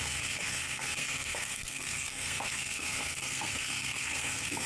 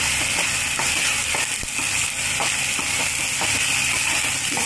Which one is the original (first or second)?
second